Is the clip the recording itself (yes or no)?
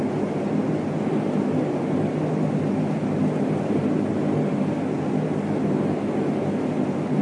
yes